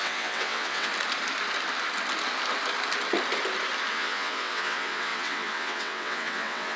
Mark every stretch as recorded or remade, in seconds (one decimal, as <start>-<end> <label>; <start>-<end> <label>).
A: 0.0-0.9 remade; 0.9-3.9 recorded; 3.9-6.8 remade